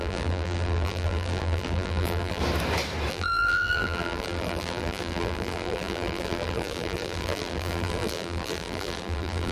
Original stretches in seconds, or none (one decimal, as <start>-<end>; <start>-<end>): 2.4-3.1